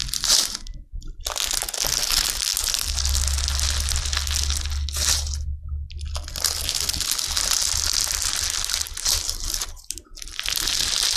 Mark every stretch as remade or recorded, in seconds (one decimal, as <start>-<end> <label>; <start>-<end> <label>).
0.0-11.2 recorded